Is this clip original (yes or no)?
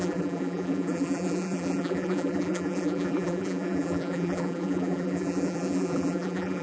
no